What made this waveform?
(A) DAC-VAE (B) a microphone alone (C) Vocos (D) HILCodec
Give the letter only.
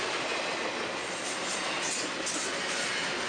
B